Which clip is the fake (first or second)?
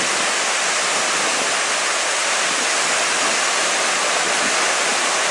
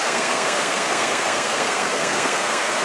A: second